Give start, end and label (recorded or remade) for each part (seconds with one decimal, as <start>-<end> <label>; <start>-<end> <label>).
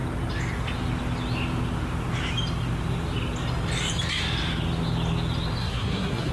0.0-5.6 recorded; 5.6-6.3 remade